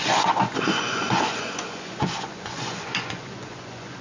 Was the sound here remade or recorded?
remade